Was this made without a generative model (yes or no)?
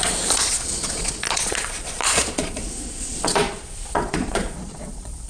no